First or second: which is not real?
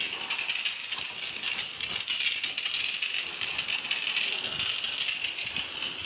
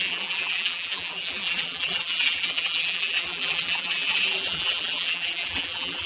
second